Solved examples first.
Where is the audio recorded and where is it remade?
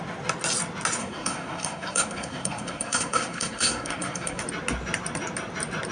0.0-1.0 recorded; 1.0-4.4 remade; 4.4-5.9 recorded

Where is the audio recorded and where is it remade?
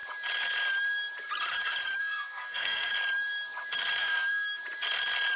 0.0-2.0 recorded; 2.0-2.9 remade; 2.9-4.0 recorded; 4.0-4.6 remade; 4.6-5.4 recorded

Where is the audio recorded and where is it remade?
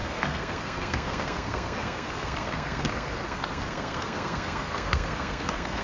0.0-5.8 remade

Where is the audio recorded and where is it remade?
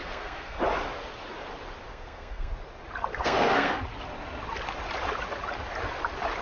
0.0-0.6 remade; 0.6-1.9 recorded; 1.9-2.5 remade; 2.5-3.1 recorded; 3.1-3.7 remade; 3.7-6.4 recorded